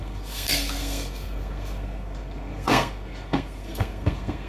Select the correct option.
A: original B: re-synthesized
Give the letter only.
B